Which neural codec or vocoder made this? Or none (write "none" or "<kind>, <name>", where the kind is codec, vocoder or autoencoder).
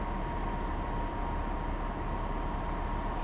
none